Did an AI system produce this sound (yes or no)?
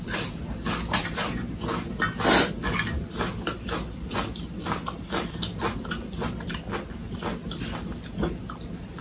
no